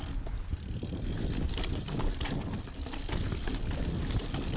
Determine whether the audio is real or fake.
real